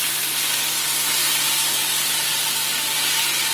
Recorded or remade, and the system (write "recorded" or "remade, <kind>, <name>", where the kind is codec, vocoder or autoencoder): recorded